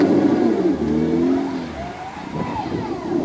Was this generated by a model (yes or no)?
no